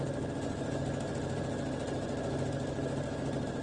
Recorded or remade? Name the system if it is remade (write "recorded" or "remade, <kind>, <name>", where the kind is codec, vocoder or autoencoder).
recorded